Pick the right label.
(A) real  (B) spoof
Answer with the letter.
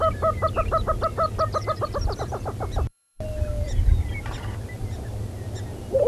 A